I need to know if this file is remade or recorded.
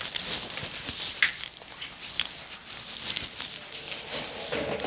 recorded